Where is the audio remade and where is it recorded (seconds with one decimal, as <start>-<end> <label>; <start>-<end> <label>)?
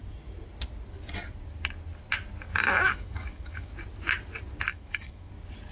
0.0-2.5 recorded; 2.5-3.7 remade; 3.7-4.7 recorded; 4.7-5.3 remade; 5.3-5.7 recorded